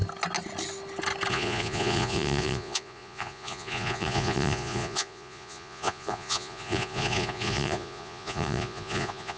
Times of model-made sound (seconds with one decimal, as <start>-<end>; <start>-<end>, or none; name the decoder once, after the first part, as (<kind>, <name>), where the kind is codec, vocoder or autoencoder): 1.3-9.4 (vocoder, Vocos)